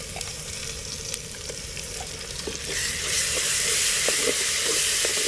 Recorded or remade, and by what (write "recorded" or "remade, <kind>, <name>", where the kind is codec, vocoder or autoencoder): remade, vocoder, BigVGAN v2